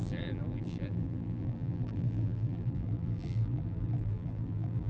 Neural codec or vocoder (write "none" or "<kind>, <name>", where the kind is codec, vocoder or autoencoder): vocoder, BigVGAN v2